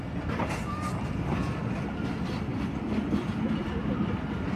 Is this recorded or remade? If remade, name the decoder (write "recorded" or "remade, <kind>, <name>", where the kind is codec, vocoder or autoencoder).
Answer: recorded